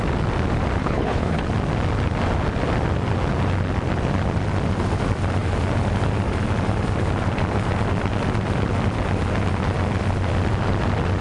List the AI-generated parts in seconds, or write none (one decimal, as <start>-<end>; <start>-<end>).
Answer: 0.8-1.4

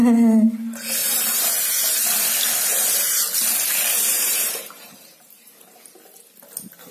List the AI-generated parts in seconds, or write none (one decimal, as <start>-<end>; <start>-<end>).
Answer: 1.0-1.5; 4.1-5.8